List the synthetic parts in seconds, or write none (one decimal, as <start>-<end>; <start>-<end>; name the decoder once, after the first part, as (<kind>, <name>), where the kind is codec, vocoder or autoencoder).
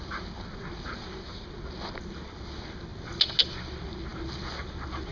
none